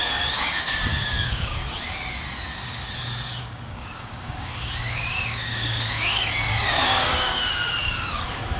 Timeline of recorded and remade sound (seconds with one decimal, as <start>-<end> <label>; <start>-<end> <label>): 0.0-1.6 remade; 1.6-3.4 recorded; 3.4-8.6 remade